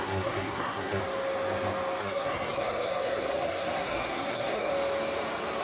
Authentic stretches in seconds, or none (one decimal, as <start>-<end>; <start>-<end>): 1.0-2.0; 4.7-5.6